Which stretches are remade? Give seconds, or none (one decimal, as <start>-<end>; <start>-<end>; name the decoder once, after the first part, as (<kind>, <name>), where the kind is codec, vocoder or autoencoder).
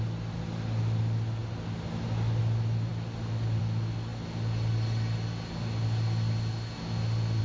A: none